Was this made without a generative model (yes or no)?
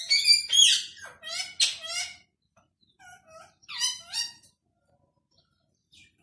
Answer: yes